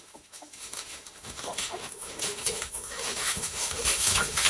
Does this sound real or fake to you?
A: fake